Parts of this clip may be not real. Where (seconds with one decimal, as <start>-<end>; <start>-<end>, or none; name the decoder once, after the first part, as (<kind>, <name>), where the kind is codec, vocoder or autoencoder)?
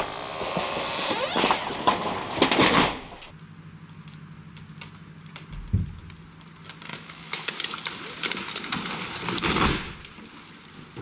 6.9-7.5 (autoencoder, DAC-VAE)